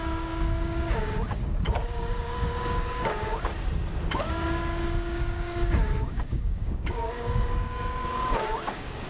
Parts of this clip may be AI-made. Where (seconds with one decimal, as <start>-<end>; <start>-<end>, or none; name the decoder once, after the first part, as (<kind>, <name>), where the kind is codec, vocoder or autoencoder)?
0.0-3.5 (codec, DAC); 4.2-9.1